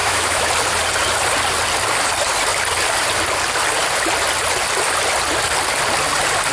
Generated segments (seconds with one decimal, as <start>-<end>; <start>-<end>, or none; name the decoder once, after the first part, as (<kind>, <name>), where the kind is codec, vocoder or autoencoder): 0.0-0.5 (autoencoder, DAC-VAE)